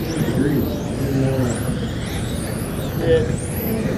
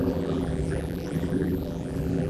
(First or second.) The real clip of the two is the first